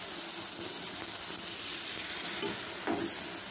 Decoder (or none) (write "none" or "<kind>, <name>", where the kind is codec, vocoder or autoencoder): none